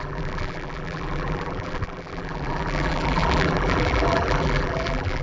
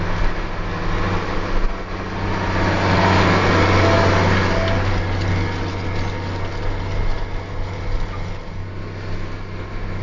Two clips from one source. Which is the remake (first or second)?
first